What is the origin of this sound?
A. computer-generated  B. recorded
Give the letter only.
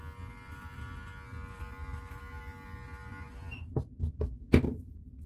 B